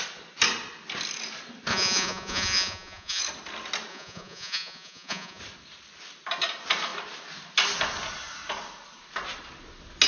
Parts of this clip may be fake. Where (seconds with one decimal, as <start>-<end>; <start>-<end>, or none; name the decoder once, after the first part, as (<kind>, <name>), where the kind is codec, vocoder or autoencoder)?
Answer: 1.7-3.2 (vocoder, Vocos); 3.9-5.4